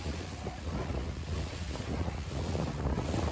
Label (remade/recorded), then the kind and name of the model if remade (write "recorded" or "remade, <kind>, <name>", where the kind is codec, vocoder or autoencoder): remade, vocoder, Vocos